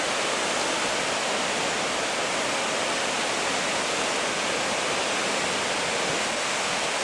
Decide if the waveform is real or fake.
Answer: real